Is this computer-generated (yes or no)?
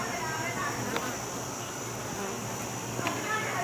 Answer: no